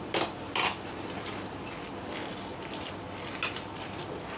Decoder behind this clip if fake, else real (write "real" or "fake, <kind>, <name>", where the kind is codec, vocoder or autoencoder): real